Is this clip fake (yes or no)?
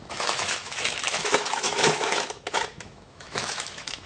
yes